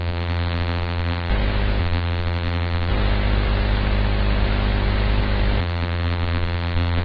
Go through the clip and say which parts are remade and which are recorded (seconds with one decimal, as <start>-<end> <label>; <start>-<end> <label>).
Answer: 0.0-1.3 remade; 1.3-1.8 recorded; 1.8-2.9 remade; 2.9-5.6 recorded; 5.6-7.0 remade